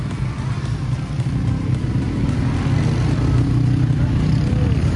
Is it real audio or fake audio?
real